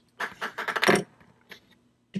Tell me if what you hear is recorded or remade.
recorded